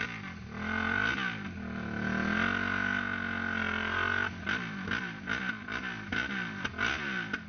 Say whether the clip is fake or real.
real